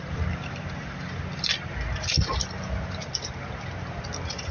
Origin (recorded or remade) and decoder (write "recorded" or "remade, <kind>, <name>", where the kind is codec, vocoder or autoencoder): recorded